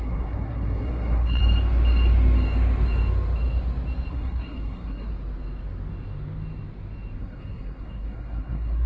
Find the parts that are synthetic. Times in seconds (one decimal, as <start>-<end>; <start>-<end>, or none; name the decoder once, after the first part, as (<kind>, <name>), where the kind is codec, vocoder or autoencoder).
0.0-1.4 (codec, SNAC); 4.1-5.1; 7.2-8.9